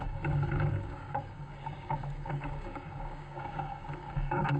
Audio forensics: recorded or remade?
remade